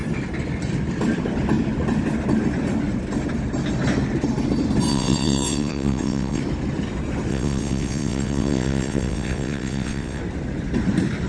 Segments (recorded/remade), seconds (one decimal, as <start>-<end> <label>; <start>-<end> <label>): 0.0-4.9 recorded; 4.9-6.4 remade; 6.4-7.3 recorded; 7.3-10.2 remade; 10.2-11.3 recorded